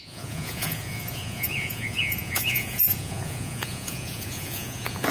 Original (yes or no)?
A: no